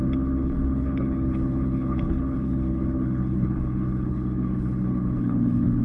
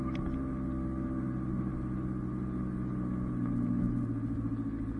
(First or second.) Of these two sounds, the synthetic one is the first